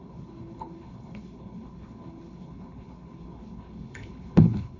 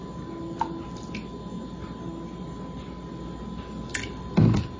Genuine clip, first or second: second